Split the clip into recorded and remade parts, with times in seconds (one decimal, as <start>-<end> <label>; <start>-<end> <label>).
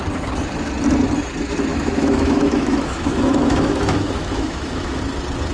0.0-1.7 recorded; 1.7-5.0 remade; 5.0-5.5 recorded